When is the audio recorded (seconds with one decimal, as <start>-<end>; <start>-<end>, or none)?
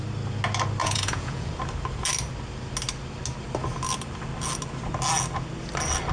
0.0-0.8; 1.5-6.1